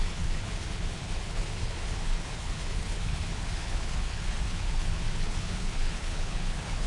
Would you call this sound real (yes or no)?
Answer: no